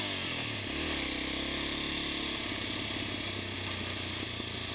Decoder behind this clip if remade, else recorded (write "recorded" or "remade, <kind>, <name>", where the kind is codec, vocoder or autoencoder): recorded